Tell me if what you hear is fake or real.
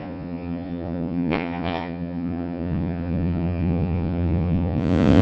fake